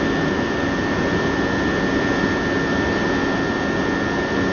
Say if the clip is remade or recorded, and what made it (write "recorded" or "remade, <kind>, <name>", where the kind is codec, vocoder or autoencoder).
recorded